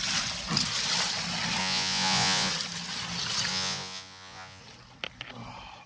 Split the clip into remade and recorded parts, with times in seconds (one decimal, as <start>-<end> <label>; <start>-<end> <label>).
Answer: 0.0-1.6 recorded; 1.6-2.5 remade; 2.5-3.5 recorded; 3.5-4.6 remade; 4.6-5.9 recorded